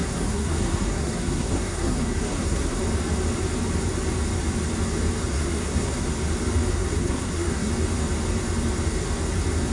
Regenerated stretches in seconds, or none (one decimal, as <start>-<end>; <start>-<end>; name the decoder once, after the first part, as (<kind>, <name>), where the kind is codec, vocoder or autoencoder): 0.0-2.8 (codec, SNAC); 5.3-6.1; 6.7-7.7